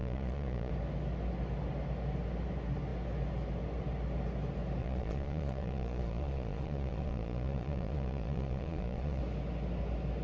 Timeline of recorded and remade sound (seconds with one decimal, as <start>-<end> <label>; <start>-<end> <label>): 0.0-0.7 remade; 0.7-4.8 recorded; 4.8-9.2 remade; 9.2-10.2 recorded